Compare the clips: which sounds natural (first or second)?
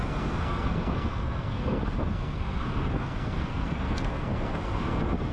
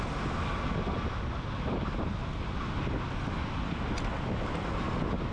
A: second